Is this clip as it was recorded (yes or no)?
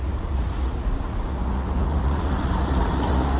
no